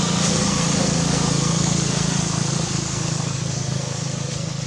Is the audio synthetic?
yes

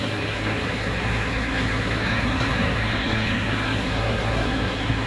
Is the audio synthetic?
yes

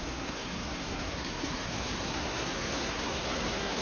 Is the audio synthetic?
yes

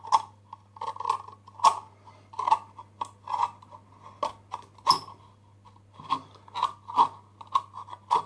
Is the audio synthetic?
no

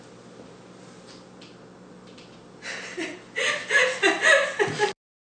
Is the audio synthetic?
no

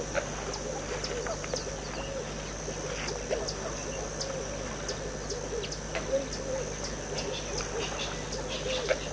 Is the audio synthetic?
no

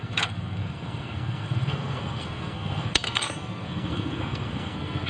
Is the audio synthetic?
yes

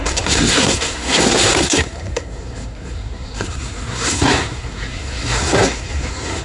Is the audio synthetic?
yes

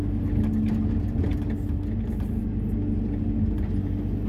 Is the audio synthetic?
no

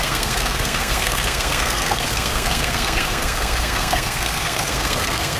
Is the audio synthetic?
yes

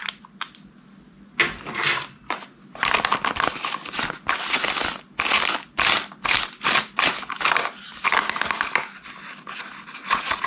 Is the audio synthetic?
no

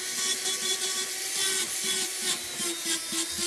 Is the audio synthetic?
no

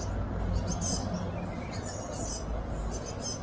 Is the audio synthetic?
no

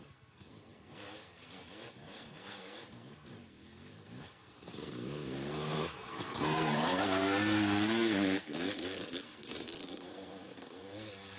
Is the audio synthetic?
yes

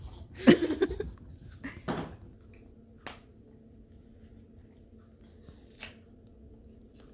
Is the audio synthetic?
no